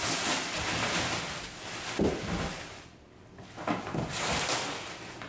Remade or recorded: recorded